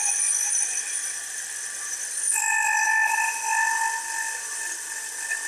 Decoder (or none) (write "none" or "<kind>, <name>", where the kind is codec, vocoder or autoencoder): none